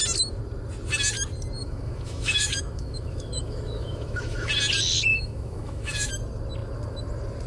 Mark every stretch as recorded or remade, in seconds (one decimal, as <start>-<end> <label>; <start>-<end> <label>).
0.0-1.6 recorded; 1.6-4.5 remade; 4.5-5.1 recorded; 5.1-6.1 remade; 6.1-7.5 recorded